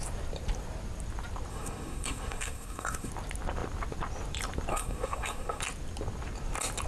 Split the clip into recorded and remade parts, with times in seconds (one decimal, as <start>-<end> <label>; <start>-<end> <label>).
0.0-1.5 recorded; 1.5-3.1 remade; 3.1-4.7 recorded; 4.7-5.6 remade; 5.6-6.9 recorded